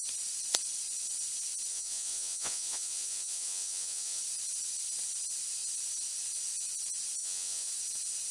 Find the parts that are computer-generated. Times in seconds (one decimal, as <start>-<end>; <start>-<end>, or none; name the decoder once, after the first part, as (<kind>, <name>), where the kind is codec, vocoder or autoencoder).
1.7-4.2 (vocoder, Vocos); 7.2-7.7